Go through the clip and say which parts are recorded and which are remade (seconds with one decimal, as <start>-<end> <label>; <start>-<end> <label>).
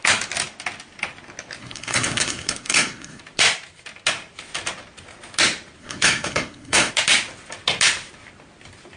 0.0-1.6 recorded; 1.6-3.2 remade; 3.2-5.8 recorded; 5.8-6.9 remade; 6.9-9.0 recorded